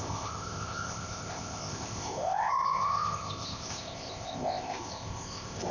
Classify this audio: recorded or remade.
remade